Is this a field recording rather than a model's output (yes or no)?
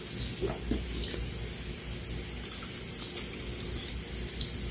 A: yes